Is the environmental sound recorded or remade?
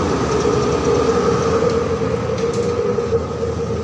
recorded